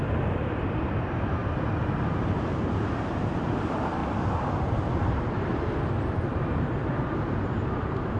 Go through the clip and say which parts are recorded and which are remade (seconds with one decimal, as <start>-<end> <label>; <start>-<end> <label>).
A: 0.0-4.0 remade; 4.0-4.9 recorded; 4.9-5.5 remade; 5.5-6.3 recorded; 6.3-8.2 remade